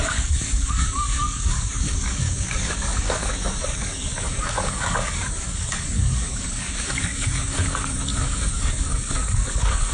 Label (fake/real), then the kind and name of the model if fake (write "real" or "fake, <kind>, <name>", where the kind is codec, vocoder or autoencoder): fake, codec, DAC